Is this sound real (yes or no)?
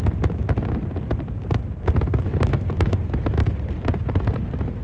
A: yes